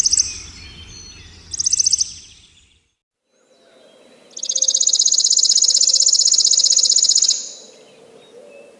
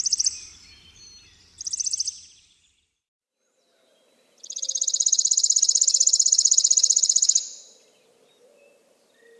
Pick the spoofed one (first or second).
second